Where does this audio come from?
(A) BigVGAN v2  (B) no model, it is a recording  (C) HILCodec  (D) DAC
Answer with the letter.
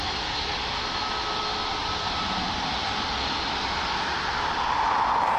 B